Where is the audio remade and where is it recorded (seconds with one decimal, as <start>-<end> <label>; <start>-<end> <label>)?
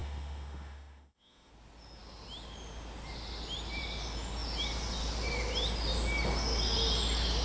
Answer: 0.0-1.5 remade; 1.5-7.4 recorded